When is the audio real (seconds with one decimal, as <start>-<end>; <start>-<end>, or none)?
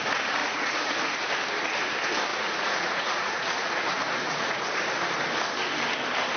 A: 0.0-0.4; 1.2-2.3; 4.6-6.4